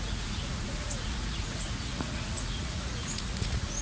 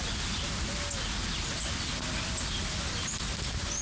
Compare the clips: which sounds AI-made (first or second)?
first